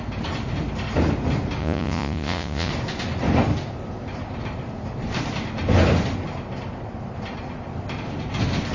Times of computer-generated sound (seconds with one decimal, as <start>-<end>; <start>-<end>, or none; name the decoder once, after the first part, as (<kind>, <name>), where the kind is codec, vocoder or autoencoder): 1.6-2.7 (vocoder, Vocos)